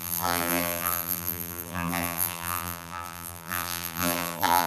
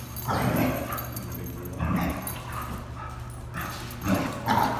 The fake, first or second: first